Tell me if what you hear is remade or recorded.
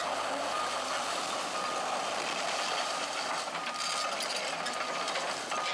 recorded